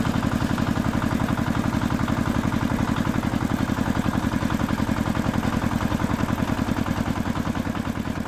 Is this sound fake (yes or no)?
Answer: no